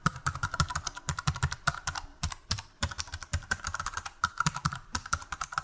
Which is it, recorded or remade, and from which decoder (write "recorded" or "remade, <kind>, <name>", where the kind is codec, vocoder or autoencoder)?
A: remade, vocoder, BigVGAN v2